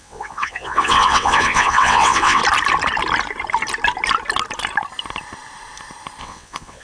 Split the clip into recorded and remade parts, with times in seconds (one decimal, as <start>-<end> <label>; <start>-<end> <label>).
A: 0.0-2.4 remade; 2.4-6.2 recorded; 6.2-6.8 remade